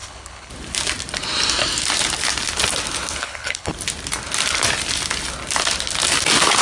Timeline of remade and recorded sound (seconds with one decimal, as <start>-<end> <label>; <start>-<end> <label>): 0.0-0.5 remade; 0.5-3.2 recorded; 3.2-3.7 remade; 3.7-6.6 recorded